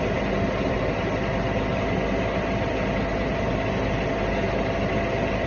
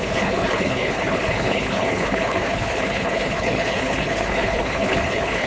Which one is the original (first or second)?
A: first